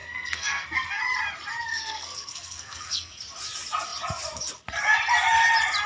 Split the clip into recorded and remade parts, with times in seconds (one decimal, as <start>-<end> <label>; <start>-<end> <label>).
0.0-1.0 remade; 1.0-1.7 recorded; 1.7-3.2 remade; 3.2-5.9 recorded